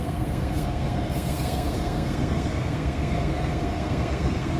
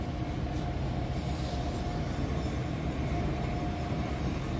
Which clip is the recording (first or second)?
second